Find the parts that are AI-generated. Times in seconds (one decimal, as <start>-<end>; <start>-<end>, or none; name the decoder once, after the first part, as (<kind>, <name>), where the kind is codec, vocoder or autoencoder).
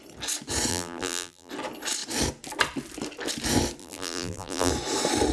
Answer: 0.7-1.5 (vocoder, BigVGAN v2); 3.8-4.7